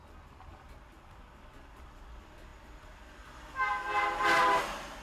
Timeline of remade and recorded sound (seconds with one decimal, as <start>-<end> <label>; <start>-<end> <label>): 0.0-5.0 recorded